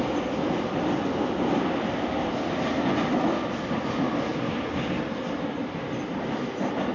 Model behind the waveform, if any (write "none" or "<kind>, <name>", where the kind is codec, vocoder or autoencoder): none